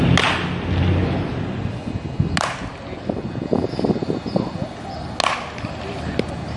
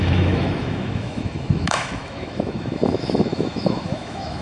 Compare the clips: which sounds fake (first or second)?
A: second